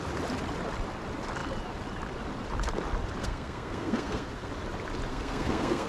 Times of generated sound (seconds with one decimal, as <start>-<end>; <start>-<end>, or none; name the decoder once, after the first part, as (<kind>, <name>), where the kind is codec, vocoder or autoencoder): 3.2-4.5 (codec, SNAC); 5.1-5.9